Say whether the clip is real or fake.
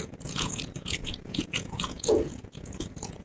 fake